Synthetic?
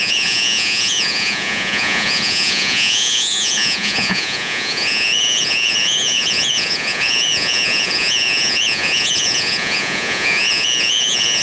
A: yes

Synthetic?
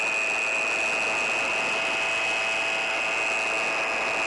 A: no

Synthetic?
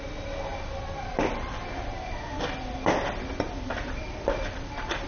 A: no